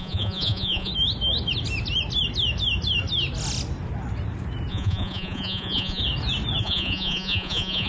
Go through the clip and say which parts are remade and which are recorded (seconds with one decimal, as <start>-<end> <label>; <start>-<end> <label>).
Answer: 0.0-0.9 remade; 0.9-4.7 recorded; 4.7-6.0 remade; 6.0-6.6 recorded; 6.6-7.9 remade